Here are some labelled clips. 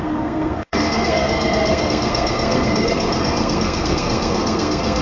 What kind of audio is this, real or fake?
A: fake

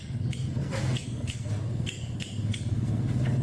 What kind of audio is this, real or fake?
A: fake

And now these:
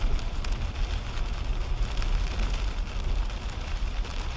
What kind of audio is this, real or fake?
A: real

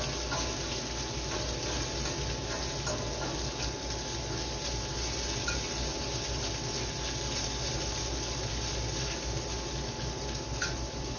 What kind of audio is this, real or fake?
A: real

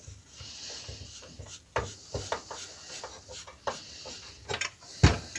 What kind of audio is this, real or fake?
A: real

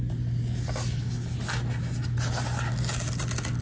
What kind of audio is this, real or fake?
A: real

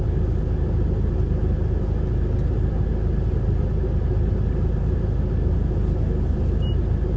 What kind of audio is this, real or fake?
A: real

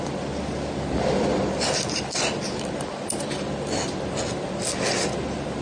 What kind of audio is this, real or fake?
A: real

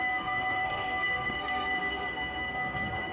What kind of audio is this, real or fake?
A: fake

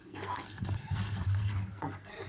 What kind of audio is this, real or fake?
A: fake